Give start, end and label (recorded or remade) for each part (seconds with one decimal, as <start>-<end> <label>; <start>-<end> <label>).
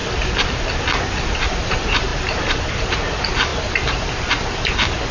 0.0-5.1 recorded